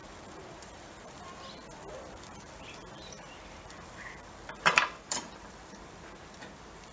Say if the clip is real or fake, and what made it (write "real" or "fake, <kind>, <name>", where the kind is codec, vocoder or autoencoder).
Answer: fake, vocoder, BigVGAN v2